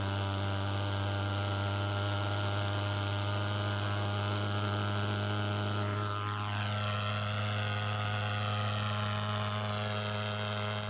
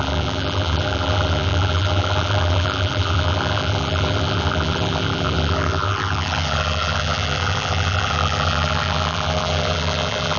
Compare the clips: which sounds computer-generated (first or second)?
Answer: second